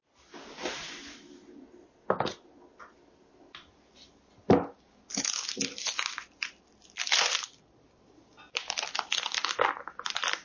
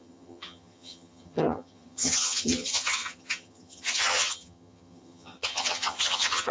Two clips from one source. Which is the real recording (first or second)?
first